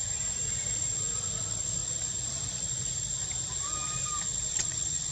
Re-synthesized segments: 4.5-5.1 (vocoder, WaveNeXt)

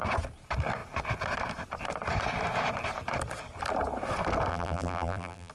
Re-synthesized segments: 4.5-5.5 (vocoder, BigVGAN v2)